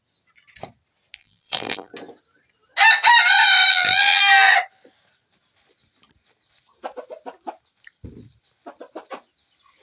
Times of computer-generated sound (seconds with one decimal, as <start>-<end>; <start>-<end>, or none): 1.2-1.9; 3.7-4.2